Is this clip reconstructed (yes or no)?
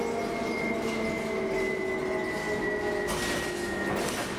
no